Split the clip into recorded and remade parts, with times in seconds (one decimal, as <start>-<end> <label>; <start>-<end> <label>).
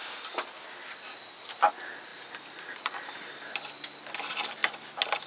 0.0-5.3 recorded